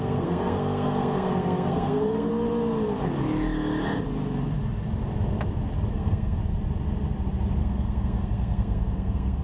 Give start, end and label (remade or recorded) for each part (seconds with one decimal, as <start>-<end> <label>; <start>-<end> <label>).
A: 0.0-2.3 remade; 2.3-5.9 recorded; 5.9-6.4 remade; 6.4-7.6 recorded; 7.6-9.4 remade